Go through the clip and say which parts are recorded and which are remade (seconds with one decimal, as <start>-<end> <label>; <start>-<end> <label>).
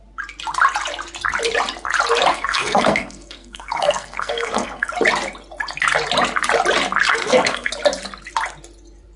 0.0-2.3 recorded; 2.3-4.9 remade; 4.9-7.1 recorded; 7.1-7.7 remade; 7.7-9.2 recorded